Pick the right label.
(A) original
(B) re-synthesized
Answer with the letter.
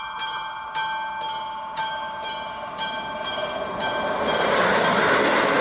A